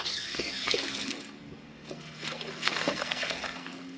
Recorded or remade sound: remade